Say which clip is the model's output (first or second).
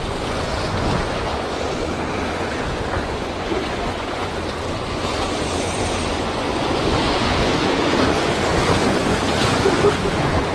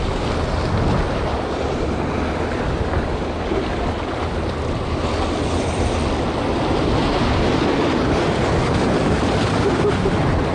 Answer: first